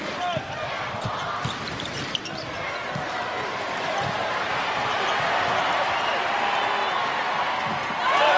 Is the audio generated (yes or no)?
no